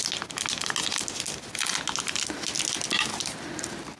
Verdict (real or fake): real